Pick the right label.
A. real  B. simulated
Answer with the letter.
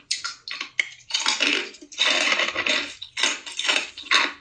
A